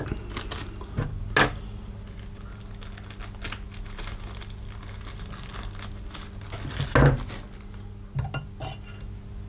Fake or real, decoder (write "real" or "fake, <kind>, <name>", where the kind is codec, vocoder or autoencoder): real